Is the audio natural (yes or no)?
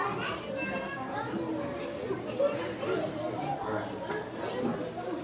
yes